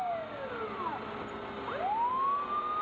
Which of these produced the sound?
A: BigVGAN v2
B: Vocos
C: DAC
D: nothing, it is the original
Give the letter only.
D